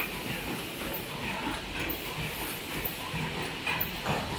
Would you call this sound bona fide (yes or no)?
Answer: yes